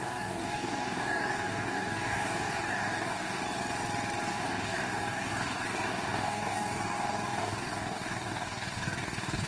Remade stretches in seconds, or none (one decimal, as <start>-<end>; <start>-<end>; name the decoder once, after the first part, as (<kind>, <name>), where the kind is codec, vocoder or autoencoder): 0.0-3.4 (codec, DAC); 4.3-9.5

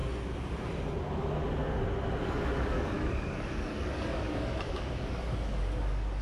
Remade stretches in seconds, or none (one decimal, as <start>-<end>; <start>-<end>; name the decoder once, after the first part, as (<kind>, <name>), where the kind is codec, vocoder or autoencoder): 2.2-6.2 (codec, DAC)

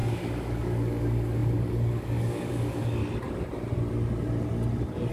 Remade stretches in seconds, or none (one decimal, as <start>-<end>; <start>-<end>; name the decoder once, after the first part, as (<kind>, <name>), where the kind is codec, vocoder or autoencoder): 0.0-3.0 (codec, DAC)

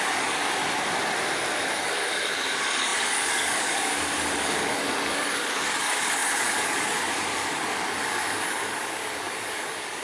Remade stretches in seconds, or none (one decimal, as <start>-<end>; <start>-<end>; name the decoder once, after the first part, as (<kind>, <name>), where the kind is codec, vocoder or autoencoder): 0.0-0.6 (codec, DAC); 1.8-10.0

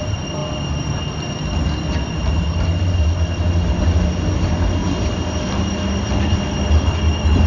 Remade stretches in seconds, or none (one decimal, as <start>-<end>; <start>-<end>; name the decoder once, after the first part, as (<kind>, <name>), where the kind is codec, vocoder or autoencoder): none

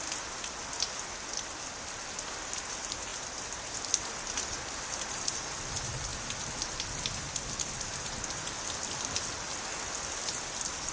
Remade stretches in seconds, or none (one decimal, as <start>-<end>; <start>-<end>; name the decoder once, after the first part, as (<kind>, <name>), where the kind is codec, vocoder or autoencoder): none